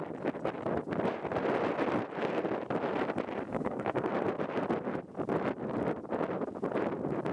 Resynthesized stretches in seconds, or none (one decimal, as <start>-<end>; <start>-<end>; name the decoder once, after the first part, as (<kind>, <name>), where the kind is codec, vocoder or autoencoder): 3.5-4.1 (codec, SNAC)